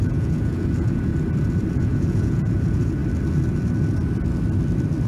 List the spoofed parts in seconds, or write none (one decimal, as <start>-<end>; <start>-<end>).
0.0-1.1; 1.7-3.0